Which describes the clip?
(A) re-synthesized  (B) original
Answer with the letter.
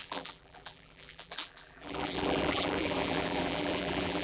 A